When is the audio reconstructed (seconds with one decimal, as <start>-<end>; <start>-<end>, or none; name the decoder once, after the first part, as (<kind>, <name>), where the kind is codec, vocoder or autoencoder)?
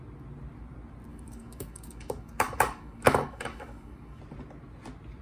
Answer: 1.1-4.2 (codec, DAC)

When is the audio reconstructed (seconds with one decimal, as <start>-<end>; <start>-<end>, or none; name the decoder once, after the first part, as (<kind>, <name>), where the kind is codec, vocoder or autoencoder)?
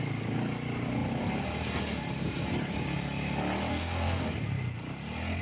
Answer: 3.7-4.3 (codec, DAC)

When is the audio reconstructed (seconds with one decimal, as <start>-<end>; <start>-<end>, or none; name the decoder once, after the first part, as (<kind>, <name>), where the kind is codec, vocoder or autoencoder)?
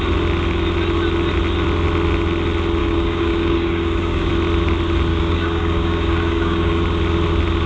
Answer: 2.8-4.3 (codec, DAC); 5.1-6.8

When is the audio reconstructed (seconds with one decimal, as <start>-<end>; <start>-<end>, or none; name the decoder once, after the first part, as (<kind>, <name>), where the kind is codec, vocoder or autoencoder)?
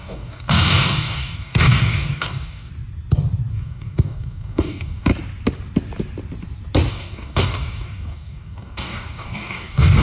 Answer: 0.0-2.7 (codec, DAC); 3.5-5.1; 6.9-10.0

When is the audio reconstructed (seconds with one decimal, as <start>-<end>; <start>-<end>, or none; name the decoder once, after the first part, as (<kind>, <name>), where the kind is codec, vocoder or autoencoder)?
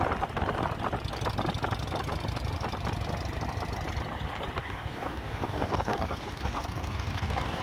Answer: 4.6-7.6 (codec, DAC)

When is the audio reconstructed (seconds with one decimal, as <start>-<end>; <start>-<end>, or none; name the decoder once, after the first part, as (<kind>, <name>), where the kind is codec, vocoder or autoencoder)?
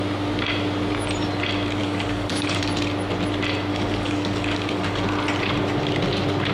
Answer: 1.8-2.6 (codec, DAC); 3.7-5.0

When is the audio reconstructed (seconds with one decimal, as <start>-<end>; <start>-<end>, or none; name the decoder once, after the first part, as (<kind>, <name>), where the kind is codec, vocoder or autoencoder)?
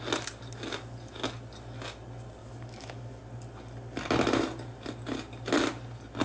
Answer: 2.4-3.2 (codec, DAC)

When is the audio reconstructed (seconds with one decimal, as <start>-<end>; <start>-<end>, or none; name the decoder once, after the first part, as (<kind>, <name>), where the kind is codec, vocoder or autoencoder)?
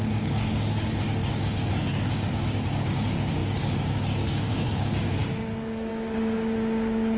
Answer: 0.0-7.2 (codec, DAC)